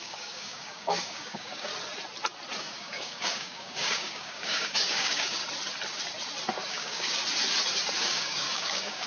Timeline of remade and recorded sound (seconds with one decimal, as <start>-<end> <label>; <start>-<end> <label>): 0.0-1.7 remade; 1.7-2.6 recorded; 2.6-5.4 remade; 5.4-6.7 recorded; 6.7-7.2 remade; 7.2-8.0 recorded; 8.0-9.1 remade